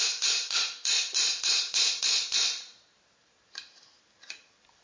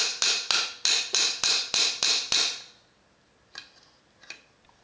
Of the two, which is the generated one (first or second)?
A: first